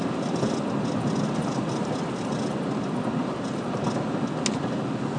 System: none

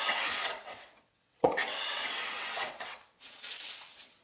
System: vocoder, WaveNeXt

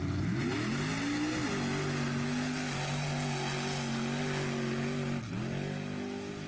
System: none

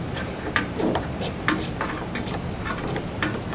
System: vocoder, BigVGAN v2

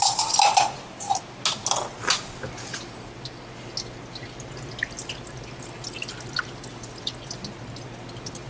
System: none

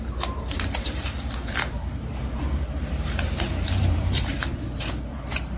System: vocoder, BigVGAN v2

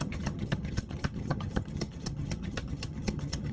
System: vocoder, HiFi-GAN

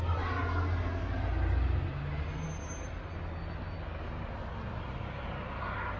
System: none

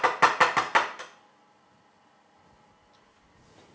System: none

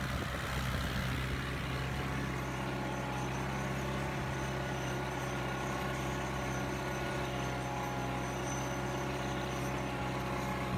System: none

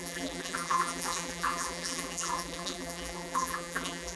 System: vocoder, BigVGAN v2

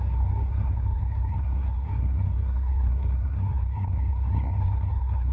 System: codec, SNAC